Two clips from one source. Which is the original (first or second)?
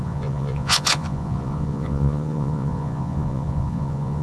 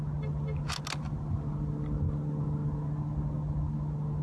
second